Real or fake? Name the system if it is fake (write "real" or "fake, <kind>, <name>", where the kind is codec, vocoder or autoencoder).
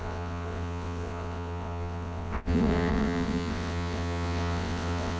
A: fake, vocoder, WaveNeXt